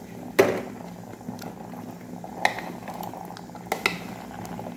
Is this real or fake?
real